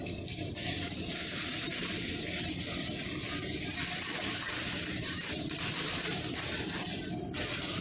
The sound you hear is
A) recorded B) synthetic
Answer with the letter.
A